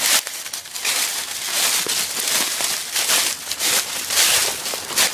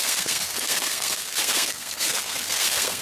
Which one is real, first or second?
first